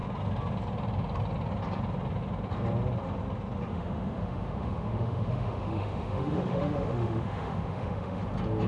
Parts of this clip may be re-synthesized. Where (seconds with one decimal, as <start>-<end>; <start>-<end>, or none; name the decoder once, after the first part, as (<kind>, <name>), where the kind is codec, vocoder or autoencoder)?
3.7-8.2 (autoencoder, DAC-VAE)